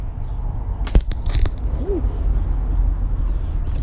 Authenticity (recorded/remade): recorded